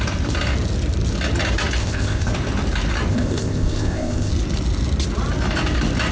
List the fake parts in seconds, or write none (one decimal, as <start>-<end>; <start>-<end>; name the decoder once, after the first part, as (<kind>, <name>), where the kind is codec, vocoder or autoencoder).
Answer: 1.8-2.3 (codec, ZipCodec); 3.1-4.3